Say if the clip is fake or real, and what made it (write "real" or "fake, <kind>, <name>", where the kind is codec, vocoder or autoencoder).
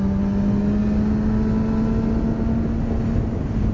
real